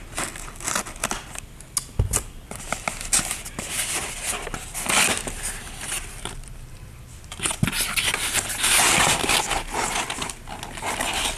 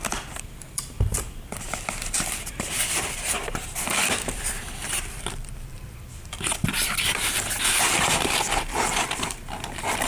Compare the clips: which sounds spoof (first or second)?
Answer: second